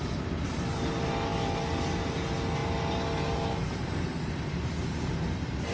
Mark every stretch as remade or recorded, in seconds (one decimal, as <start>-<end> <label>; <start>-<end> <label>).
0.0-5.7 recorded